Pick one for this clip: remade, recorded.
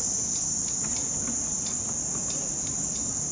recorded